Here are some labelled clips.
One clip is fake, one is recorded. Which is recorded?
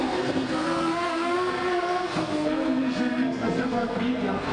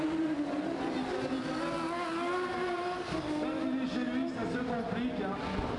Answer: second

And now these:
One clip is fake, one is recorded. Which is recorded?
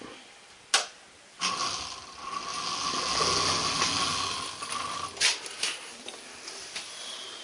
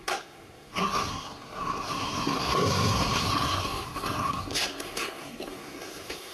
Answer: first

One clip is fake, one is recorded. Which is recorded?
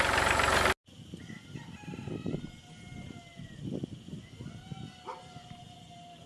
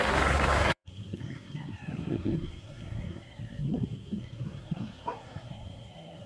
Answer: first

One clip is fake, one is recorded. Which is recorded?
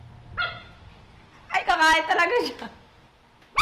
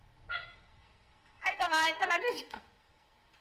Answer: first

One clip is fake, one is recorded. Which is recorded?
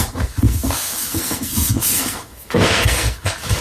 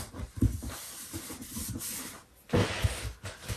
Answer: second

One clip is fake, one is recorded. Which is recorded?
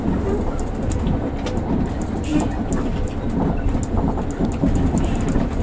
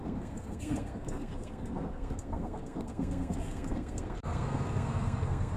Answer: first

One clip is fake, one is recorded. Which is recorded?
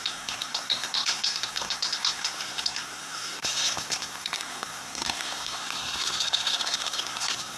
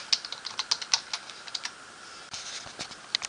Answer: second